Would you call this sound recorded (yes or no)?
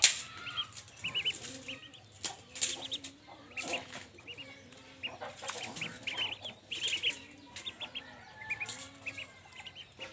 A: yes